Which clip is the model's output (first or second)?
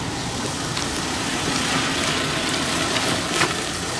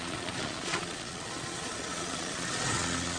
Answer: second